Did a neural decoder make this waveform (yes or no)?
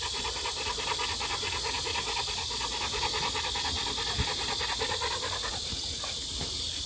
no